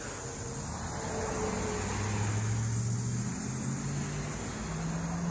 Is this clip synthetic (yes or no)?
no